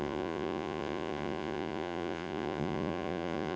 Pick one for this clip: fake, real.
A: fake